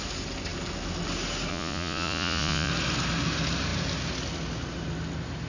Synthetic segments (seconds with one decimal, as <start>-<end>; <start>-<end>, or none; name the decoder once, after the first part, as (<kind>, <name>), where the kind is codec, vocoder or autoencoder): 1.5-2.7 (vocoder, Vocos)

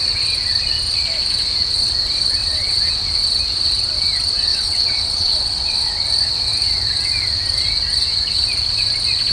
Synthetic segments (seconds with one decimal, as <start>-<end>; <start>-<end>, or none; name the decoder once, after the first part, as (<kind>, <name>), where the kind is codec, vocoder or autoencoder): 2.4-2.9 (vocoder, WaveNeXt); 4.5-5.9

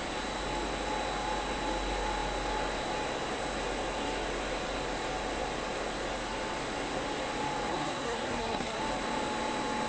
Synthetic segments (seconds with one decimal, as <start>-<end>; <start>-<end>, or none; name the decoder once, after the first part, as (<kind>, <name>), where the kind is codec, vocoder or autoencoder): 7.7-8.8 (codec, SNAC)